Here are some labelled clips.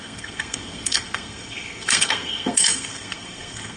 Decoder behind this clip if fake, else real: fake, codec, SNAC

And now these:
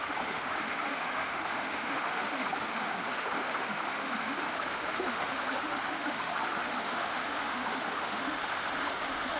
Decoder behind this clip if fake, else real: fake, autoencoder, DAC-VAE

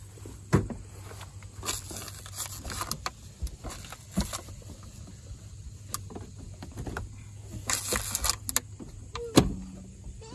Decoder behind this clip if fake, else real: real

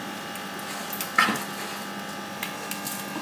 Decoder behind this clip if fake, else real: real